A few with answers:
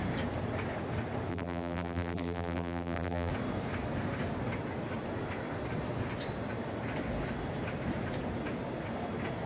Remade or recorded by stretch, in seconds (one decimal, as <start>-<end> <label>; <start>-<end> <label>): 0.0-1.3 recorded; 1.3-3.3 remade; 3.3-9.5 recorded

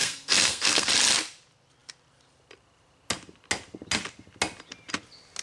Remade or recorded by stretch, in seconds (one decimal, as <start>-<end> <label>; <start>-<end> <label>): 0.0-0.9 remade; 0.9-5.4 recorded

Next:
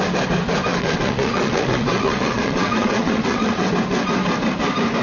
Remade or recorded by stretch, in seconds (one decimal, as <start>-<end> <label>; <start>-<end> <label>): 0.0-0.7 recorded; 0.7-3.7 remade; 3.7-5.0 recorded

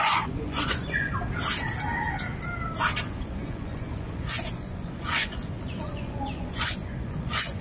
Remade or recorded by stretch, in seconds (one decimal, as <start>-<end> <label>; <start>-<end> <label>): 0.0-1.1 remade; 1.1-3.0 recorded; 3.0-7.6 remade

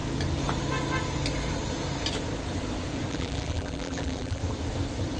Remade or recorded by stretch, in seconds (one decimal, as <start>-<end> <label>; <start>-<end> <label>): 0.0-3.1 recorded; 3.1-4.4 remade; 4.4-5.2 recorded

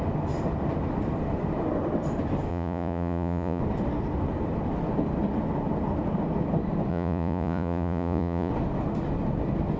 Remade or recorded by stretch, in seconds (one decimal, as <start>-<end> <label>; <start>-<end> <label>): 0.0-2.5 recorded; 2.5-3.6 remade; 3.6-6.9 recorded; 6.9-8.5 remade; 8.5-9.8 recorded